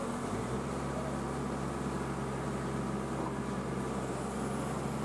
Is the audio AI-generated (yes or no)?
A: no